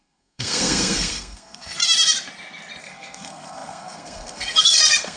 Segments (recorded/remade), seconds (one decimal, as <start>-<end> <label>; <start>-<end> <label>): 0.0-1.8 remade; 1.8-2.8 recorded; 2.8-5.2 remade